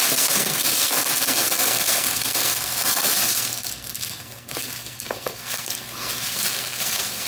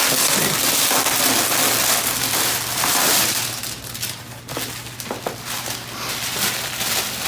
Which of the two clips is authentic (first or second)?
second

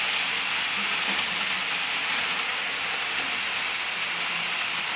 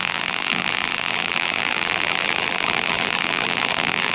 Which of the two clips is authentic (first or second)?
first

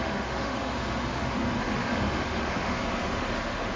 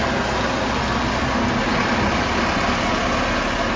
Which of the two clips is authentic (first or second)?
second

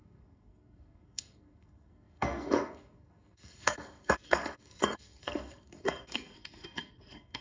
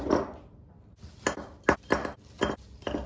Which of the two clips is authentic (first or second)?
second